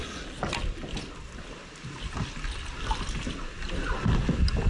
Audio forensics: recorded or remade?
recorded